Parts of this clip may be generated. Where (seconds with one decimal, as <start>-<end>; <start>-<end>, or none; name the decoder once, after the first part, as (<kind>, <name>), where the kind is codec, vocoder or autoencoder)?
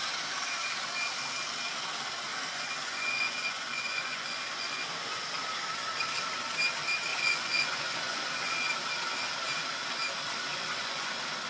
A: 2.3-5.2 (vocoder, Vocos); 7.1-8.7; 10.5-11.1